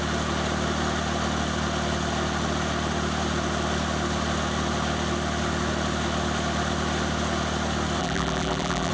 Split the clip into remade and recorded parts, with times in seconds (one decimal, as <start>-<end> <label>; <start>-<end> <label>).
0.0-8.0 recorded; 8.0-8.9 remade